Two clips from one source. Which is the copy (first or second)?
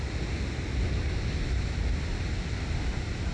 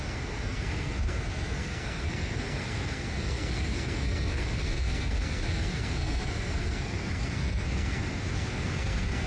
second